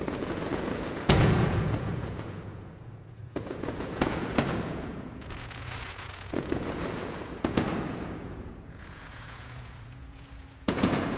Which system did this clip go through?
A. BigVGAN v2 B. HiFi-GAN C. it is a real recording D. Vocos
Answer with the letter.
D